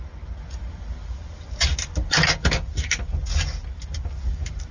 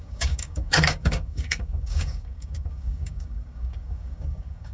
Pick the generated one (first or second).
second